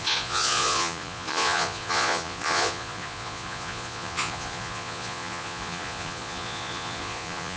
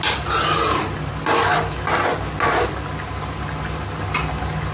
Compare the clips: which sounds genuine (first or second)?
second